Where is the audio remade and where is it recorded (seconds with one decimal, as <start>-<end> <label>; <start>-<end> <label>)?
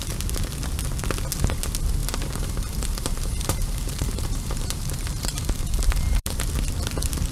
0.0-2.0 recorded; 2.0-6.4 remade; 6.4-7.3 recorded